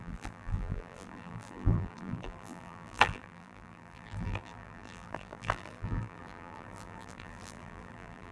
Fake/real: fake